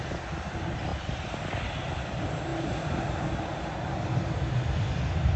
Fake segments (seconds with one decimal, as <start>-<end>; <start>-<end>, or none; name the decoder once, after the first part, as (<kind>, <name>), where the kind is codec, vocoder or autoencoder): none